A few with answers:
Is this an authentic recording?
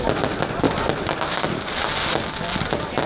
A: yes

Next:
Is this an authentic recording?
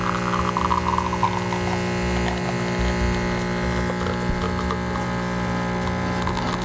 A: yes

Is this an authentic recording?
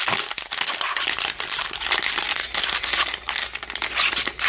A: yes